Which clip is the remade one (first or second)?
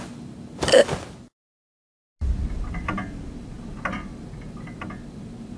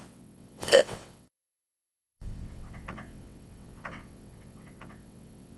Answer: second